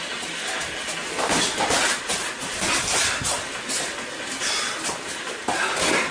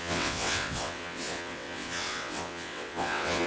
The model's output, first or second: second